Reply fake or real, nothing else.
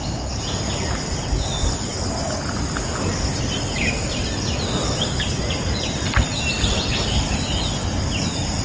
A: real